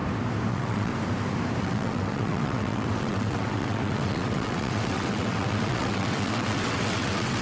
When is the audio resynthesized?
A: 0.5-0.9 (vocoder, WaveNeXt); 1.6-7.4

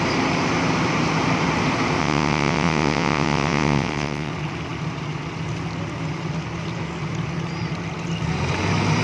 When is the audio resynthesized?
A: 2.0-4.3 (vocoder, WaveNeXt)